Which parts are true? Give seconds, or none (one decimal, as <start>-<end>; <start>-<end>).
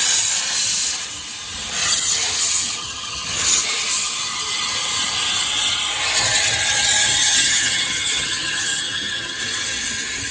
0.0-1.8; 3.6-7.2; 9.4-10.3